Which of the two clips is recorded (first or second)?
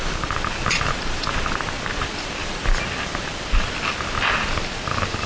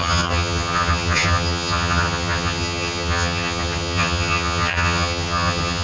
first